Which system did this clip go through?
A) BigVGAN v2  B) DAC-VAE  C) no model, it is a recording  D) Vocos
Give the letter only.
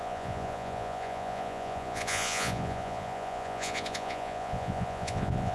D